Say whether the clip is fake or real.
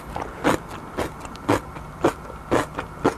real